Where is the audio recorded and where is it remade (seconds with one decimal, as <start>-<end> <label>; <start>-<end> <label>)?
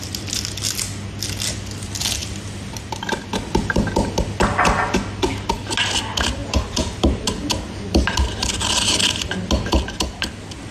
0.0-2.2 recorded; 2.2-2.9 remade; 2.9-6.4 recorded; 6.4-7.3 remade; 7.3-10.7 recorded